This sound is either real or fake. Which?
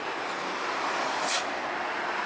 real